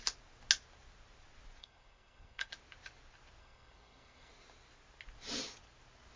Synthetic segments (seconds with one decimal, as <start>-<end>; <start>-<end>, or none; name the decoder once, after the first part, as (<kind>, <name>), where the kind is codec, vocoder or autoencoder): 1.6-2.5 (codec, SNAC); 3.4-4.3